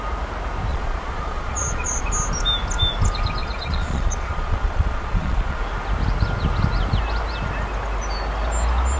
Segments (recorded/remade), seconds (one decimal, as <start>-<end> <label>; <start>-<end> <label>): 0.0-0.7 recorded; 0.7-2.0 remade; 2.0-3.4 recorded; 3.4-5.6 remade; 5.6-9.0 recorded